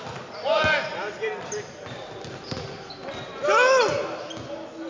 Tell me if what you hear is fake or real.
real